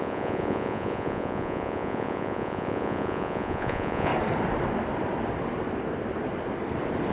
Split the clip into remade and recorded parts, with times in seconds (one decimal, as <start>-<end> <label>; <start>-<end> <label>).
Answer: 0.0-4.1 remade; 4.1-7.1 recorded